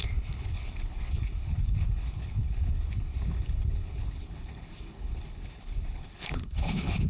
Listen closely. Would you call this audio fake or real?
fake